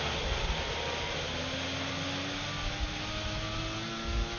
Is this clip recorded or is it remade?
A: recorded